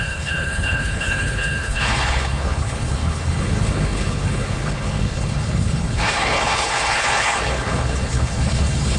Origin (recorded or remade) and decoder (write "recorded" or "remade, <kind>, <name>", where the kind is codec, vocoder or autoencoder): remade, codec, HILCodec